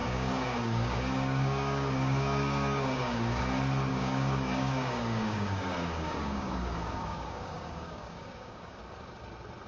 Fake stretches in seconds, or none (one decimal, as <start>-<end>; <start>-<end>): 0.0-3.4; 3.9-8.8

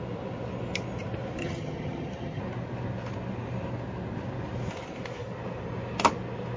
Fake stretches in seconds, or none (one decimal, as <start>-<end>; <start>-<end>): 1.4-2.4

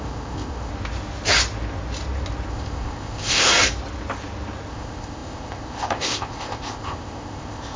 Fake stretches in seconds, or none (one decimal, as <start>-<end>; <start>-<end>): 0.0-0.7; 2.5-3.5; 4.7-7.8

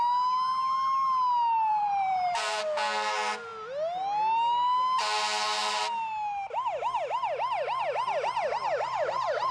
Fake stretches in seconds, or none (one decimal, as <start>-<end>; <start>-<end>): 1.7-2.6

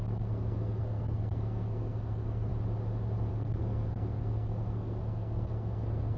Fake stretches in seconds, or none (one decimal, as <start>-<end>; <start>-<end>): 0.0-2.5; 3.3-6.2